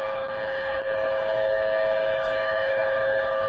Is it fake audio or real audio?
fake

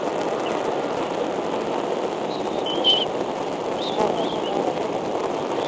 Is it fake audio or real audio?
real